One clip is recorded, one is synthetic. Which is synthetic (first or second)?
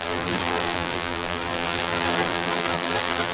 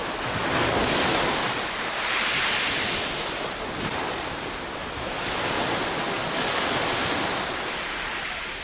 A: first